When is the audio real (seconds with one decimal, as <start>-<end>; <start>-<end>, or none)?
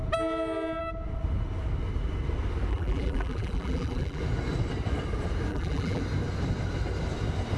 0.0-2.7; 4.2-5.5; 6.0-7.6